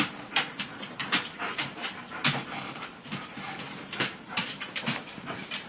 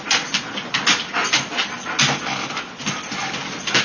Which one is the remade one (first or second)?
first